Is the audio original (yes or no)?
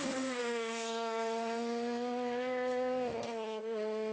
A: no